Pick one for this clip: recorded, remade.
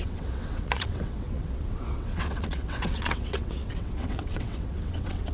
remade